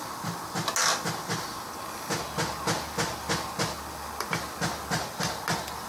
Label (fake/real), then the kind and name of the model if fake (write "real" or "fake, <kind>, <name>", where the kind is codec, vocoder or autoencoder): real